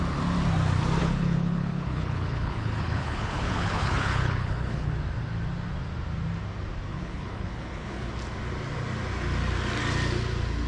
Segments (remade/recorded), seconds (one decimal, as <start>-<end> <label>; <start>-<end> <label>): 0.0-1.0 recorded; 1.0-4.9 remade; 4.9-6.9 recorded; 6.9-8.1 remade; 8.1-10.7 recorded